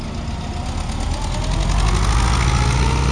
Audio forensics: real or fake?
real